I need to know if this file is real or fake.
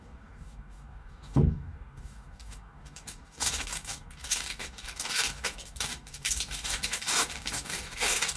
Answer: fake